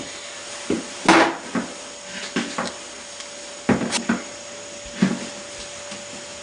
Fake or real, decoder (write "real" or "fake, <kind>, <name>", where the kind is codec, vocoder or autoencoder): real